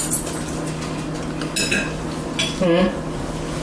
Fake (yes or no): no